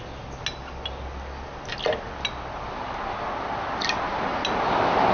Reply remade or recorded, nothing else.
recorded